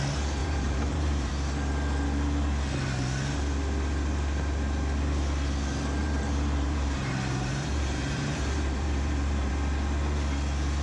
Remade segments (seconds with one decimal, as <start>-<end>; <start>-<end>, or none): 0.4-1.3; 6.0-9.5